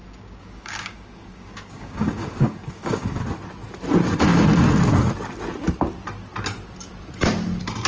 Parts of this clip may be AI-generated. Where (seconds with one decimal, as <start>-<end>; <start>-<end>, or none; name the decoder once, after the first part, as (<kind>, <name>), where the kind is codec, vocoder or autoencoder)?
0.0-3.2 (codec, DAC)